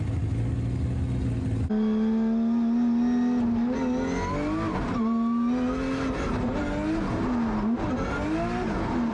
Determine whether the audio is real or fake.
real